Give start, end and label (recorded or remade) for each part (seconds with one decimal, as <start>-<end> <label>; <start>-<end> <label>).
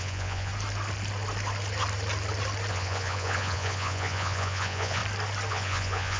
0.0-0.5 remade; 0.5-2.7 recorded; 2.7-5.0 remade; 5.0-5.5 recorded; 5.5-6.2 remade